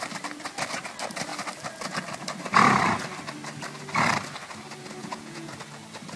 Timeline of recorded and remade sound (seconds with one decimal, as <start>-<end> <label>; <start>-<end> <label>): 0.0-5.0 recorded; 5.0-5.5 remade; 5.5-6.2 recorded